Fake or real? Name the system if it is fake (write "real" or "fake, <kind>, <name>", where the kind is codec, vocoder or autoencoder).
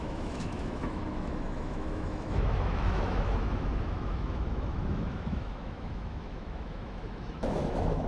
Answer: fake, autoencoder, DAC-VAE